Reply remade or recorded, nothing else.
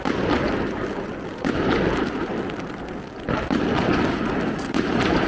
recorded